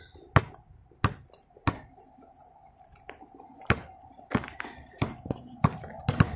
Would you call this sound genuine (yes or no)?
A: yes